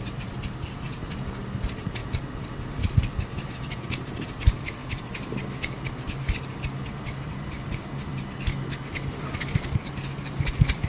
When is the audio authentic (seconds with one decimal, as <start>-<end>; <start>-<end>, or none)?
2.0-3.3; 4.8-6.6; 8.1-9.1